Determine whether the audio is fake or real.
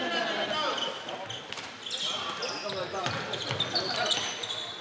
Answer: real